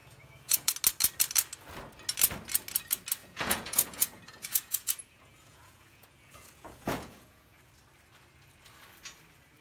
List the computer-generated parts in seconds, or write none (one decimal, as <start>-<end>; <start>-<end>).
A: 0.0-0.7; 3.2-7.7